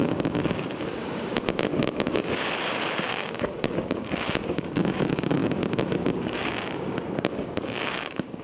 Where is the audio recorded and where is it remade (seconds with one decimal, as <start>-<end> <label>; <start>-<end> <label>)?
0.0-8.4 remade